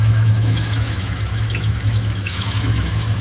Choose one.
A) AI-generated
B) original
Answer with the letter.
A